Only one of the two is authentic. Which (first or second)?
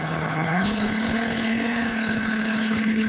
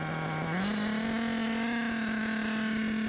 second